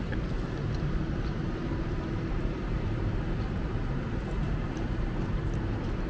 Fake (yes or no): yes